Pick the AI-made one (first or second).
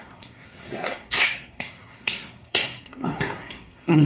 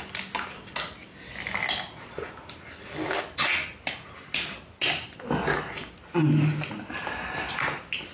first